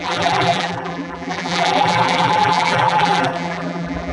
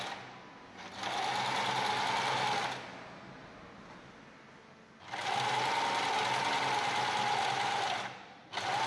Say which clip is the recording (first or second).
second